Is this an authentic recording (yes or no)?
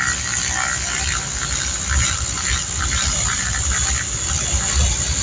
yes